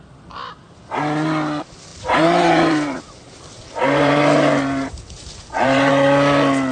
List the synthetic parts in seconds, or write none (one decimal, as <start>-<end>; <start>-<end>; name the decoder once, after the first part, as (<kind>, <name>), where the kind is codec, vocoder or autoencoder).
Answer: 1.9-5.9 (vocoder, BigVGAN v2)